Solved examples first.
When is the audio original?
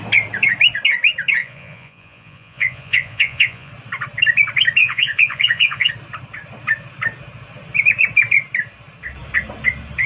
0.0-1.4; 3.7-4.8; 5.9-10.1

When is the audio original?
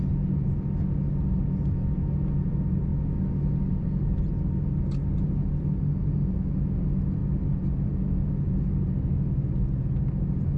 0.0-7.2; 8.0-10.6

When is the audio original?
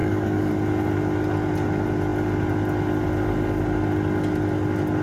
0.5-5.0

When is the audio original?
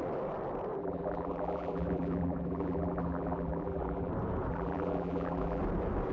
0.0-0.8; 4.1-4.5; 5.6-6.1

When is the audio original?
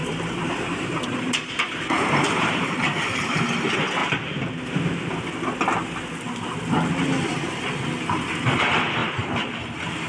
2.5-9.0; 9.5-10.1